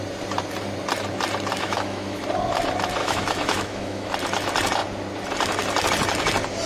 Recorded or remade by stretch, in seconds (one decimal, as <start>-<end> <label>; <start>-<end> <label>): 0.0-1.5 recorded; 1.5-2.2 remade; 2.2-3.0 recorded; 3.0-4.1 remade; 4.1-6.7 recorded